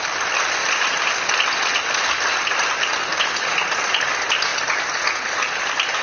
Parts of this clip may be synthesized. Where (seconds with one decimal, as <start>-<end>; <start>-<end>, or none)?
none